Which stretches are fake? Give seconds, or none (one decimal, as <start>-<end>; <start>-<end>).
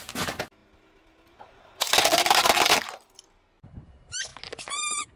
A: none